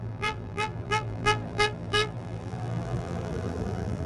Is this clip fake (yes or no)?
yes